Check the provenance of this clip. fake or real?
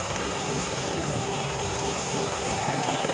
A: fake